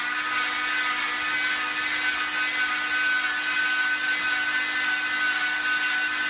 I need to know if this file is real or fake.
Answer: real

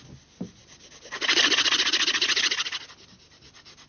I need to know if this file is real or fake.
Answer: real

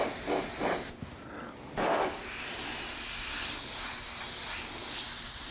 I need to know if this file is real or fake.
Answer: real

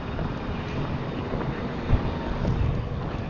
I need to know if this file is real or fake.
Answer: real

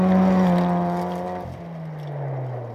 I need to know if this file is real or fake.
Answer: real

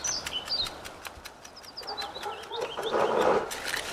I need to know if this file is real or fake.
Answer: real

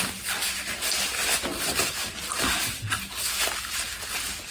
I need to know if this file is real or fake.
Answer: real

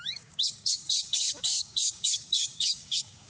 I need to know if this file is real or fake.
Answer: fake